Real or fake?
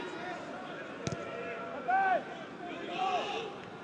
real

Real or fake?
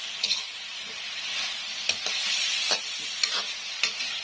real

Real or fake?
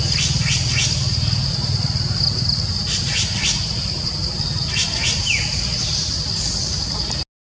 real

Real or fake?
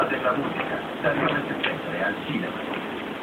real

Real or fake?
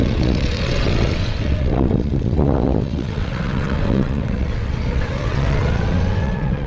fake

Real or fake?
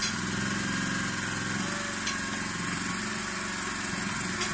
real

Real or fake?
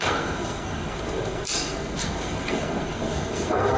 fake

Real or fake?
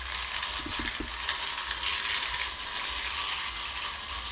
real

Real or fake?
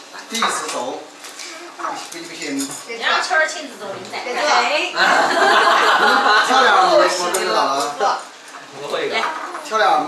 real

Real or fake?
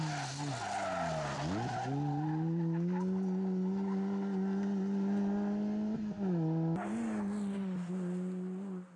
real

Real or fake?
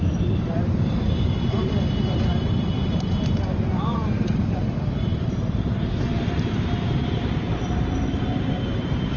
fake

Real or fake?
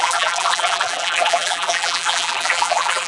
fake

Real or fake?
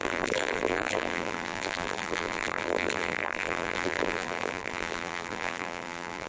fake